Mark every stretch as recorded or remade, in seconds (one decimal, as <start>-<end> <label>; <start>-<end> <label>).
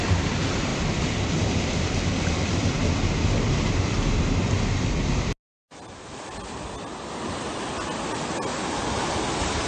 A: 0.0-9.7 recorded